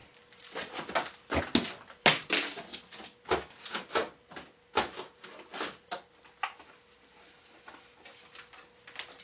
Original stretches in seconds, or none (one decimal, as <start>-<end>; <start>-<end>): 0.0-9.2